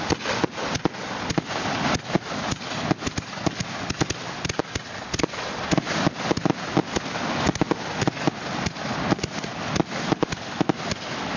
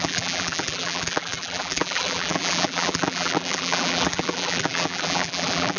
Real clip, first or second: first